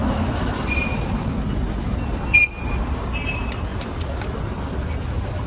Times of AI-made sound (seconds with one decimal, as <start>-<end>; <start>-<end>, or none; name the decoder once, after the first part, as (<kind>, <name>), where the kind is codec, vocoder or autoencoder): 0.0-0.6 (autoencoder, DAC-VAE)